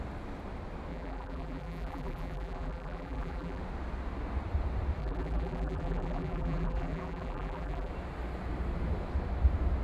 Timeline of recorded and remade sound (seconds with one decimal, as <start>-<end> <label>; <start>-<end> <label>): 0.0-0.9 recorded; 0.9-3.6 remade; 3.6-5.0 recorded; 5.0-7.9 remade; 7.9-9.8 recorded